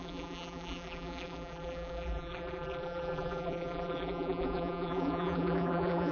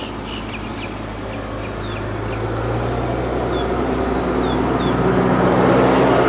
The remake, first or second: first